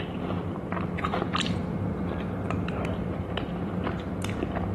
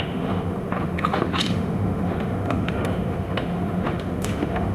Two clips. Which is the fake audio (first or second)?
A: second